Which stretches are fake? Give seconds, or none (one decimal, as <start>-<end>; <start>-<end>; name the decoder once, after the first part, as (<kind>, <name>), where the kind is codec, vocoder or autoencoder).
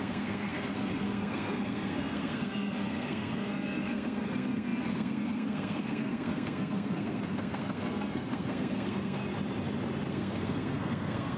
0.0-9.2 (codec, SNAC); 10.1-11.4